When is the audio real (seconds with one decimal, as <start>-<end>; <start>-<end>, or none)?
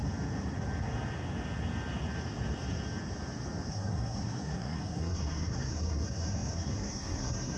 0.0-3.7